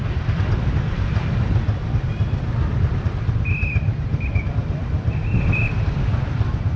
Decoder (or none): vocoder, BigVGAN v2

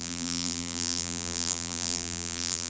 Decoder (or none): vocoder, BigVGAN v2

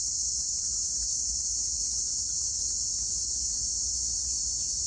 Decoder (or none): vocoder, BigVGAN v2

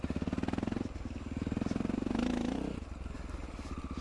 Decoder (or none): none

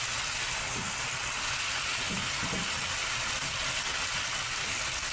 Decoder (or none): none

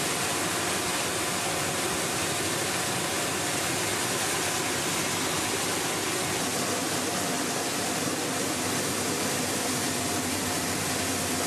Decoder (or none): none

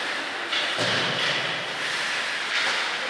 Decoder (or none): none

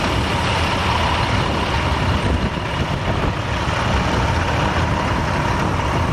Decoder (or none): none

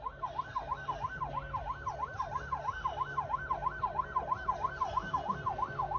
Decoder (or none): none